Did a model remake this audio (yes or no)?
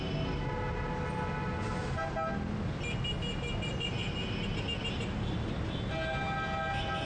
no